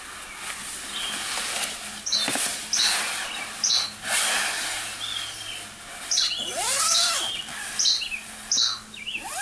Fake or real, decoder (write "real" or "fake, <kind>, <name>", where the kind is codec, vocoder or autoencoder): real